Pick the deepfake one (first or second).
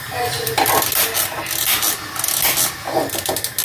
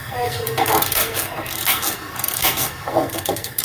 second